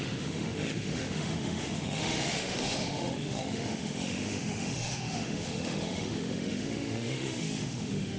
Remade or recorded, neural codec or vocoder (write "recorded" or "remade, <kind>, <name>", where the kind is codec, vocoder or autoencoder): remade, autoencoder, DAC-VAE